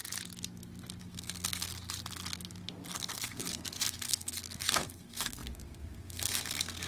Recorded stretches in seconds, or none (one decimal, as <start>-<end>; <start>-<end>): 0.0-1.0; 1.7-2.9